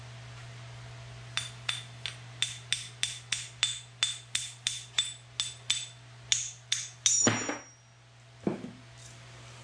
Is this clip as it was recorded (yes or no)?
yes